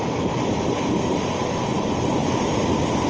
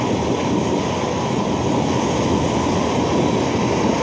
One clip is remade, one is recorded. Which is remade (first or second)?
first